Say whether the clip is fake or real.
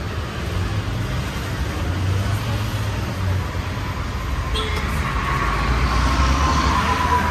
real